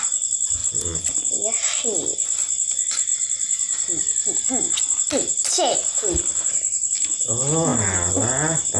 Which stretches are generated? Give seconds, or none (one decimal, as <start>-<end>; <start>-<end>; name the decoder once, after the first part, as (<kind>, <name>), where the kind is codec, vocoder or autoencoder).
none